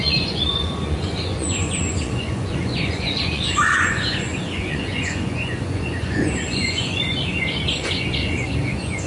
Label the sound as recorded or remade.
remade